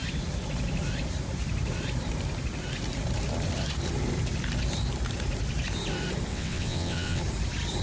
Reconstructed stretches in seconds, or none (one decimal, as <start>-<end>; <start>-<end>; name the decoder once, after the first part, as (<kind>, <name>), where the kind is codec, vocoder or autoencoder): 6.3-7.2 (vocoder, WaveNeXt)